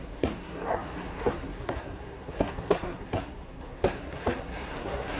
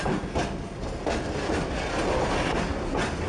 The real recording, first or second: second